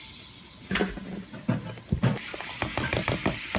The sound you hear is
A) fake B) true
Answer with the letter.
B